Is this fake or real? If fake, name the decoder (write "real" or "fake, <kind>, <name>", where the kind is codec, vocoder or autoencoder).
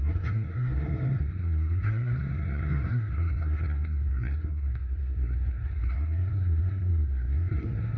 fake, codec, SNAC